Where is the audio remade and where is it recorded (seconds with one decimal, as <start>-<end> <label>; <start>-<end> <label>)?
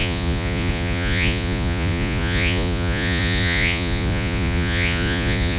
0.0-5.6 remade